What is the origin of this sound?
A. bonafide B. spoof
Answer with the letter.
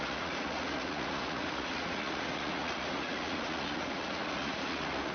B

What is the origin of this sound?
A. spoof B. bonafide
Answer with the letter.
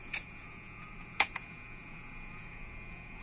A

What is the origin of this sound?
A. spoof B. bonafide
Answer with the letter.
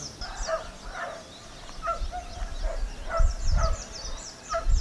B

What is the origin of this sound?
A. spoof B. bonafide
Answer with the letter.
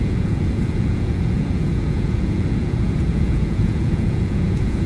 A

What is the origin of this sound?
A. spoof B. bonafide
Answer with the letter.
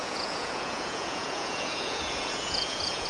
A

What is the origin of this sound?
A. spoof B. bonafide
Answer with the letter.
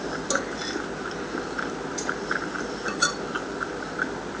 B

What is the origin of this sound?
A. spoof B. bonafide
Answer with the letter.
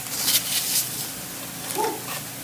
B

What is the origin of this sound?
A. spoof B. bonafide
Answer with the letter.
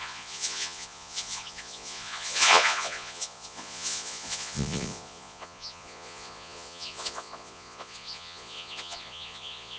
A